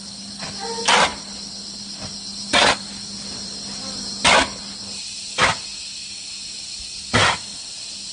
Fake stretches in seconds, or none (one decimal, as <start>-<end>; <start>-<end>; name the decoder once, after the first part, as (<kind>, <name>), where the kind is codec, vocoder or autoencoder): none